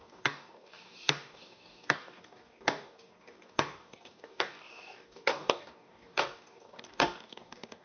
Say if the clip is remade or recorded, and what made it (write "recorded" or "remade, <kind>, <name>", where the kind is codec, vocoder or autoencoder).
remade, codec, DAC